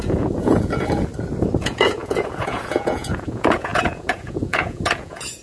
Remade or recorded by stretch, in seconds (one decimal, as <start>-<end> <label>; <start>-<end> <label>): 0.0-1.1 remade; 1.1-1.6 recorded; 1.6-5.4 remade